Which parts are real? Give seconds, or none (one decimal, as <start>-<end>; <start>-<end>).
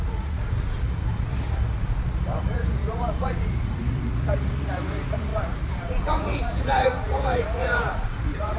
none